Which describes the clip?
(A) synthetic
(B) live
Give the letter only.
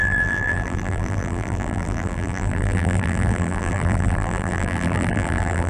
A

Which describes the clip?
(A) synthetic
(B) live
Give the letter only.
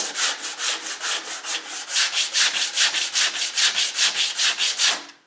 B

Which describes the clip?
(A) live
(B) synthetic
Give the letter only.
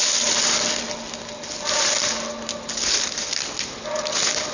A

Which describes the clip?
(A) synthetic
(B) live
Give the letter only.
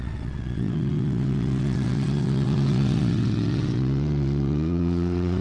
A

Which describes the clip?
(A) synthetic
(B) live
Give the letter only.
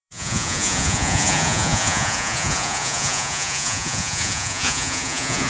A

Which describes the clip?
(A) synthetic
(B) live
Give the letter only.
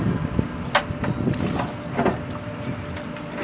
B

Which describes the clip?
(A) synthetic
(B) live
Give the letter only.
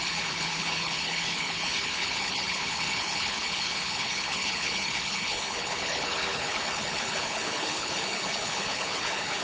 A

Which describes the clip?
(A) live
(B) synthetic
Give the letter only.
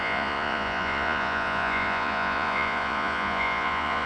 B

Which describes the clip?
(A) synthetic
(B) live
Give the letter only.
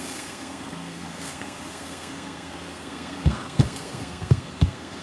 A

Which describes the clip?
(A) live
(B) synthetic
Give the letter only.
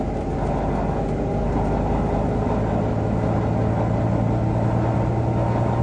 A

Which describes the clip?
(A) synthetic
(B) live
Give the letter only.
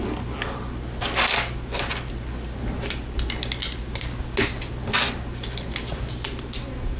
B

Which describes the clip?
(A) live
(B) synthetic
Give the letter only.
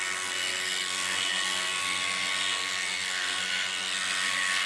B